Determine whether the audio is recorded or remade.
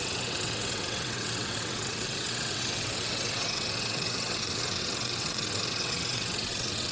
remade